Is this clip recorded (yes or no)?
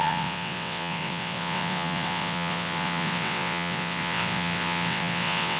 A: no